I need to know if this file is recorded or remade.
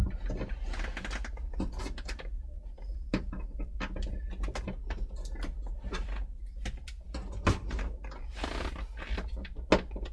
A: recorded